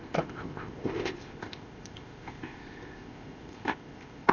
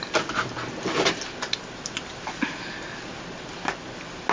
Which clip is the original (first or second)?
second